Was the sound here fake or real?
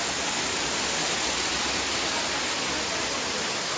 real